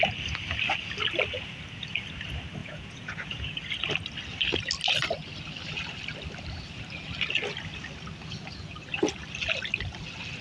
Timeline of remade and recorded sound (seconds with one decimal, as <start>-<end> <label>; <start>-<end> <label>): 0.0-2.6 recorded; 2.6-3.6 remade; 3.6-10.4 recorded